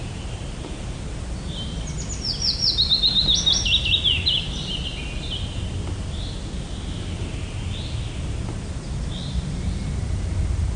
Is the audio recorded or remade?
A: recorded